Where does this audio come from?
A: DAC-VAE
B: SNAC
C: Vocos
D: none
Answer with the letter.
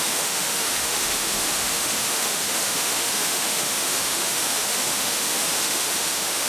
A